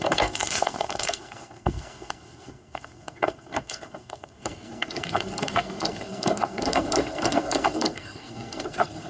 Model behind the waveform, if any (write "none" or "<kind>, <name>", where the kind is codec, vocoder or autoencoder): codec, SNAC